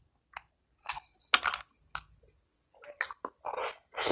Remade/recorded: recorded